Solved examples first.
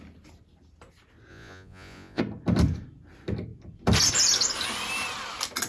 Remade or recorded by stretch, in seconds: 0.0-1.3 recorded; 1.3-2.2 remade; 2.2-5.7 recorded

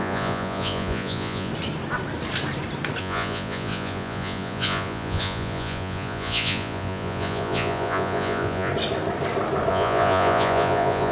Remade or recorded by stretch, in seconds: 0.0-1.5 remade; 1.5-3.0 recorded; 3.0-8.7 remade; 8.7-9.7 recorded; 9.7-11.1 remade

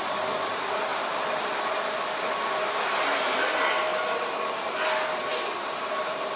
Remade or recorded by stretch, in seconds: 0.0-6.4 recorded